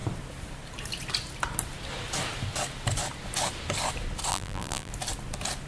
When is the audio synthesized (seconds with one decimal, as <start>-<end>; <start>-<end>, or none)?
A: 4.3-4.9